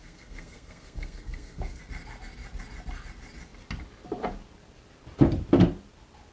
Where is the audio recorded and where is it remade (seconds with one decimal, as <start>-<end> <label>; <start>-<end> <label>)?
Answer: 0.0-1.8 remade; 1.8-6.3 recorded